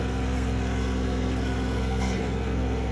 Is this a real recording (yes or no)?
no